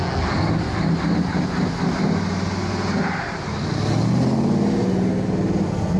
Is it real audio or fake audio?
real